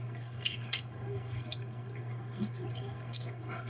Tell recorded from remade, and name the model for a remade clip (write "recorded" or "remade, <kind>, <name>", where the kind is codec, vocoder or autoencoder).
remade, codec, SNAC